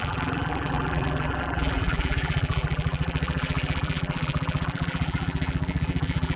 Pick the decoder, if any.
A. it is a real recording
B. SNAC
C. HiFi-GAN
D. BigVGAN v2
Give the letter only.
D